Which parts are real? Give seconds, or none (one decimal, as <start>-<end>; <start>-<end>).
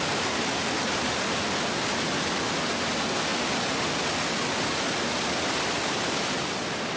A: 0.0-7.0